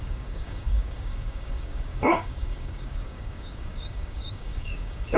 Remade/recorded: remade